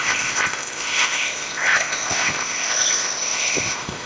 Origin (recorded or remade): remade